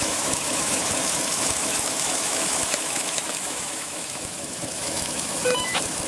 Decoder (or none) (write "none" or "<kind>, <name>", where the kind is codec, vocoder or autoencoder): autoencoder, DAC-VAE